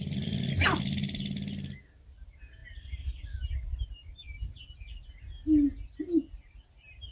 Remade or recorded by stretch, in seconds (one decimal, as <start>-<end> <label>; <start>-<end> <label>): 0.0-7.1 recorded